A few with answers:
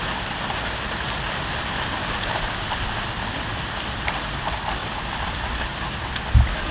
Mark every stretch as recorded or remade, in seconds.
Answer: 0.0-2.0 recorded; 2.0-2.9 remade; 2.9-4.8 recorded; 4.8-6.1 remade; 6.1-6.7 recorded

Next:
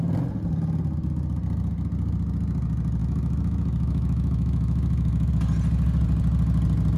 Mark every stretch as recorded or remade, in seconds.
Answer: 0.0-3.0 recorded; 3.0-5.3 remade; 5.3-7.0 recorded

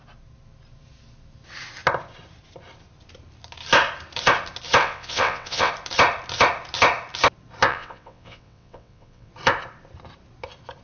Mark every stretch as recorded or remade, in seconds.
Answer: 0.0-4.8 recorded; 4.8-5.7 remade; 5.7-7.7 recorded; 7.7-9.3 remade; 9.3-10.8 recorded

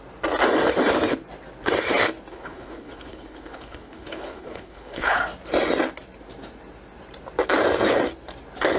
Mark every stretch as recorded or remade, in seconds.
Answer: 0.0-2.3 recorded; 2.3-5.2 remade; 5.2-8.8 recorded

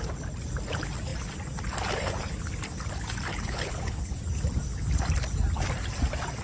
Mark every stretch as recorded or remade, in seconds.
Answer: 0.0-3.3 recorded; 3.3-4.2 remade; 4.2-6.4 recorded